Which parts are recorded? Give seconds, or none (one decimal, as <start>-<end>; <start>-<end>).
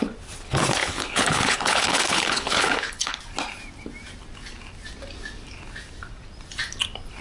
0.0-0.8; 3.2-7.2